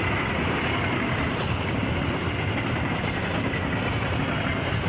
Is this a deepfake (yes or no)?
no